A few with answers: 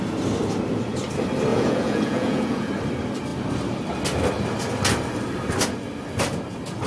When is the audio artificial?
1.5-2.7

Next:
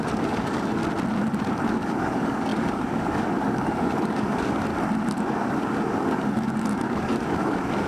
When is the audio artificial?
0.0-0.8; 1.7-4.7; 5.2-7.9

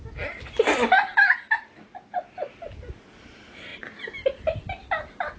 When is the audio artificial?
none

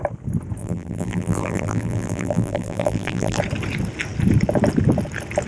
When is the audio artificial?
0.6-3.4